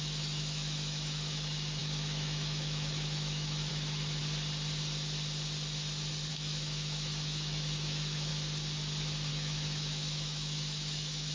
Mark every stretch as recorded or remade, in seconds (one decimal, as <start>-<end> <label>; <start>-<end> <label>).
0.0-4.2 remade; 4.2-6.3 recorded; 6.3-8.3 remade; 8.3-9.3 recorded; 9.3-11.3 remade